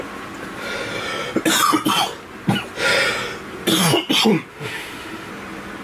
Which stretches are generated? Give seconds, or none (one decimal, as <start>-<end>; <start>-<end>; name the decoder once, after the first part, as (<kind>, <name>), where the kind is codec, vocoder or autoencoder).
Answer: 4.5-5.3 (autoencoder, DAC-VAE)